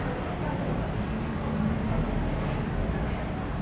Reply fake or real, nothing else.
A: real